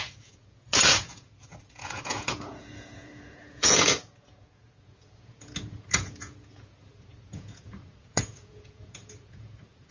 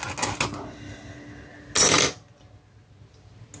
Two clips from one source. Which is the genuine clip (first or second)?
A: second